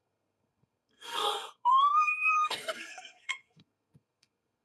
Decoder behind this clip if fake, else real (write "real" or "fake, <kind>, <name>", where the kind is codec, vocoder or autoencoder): fake, codec, SNAC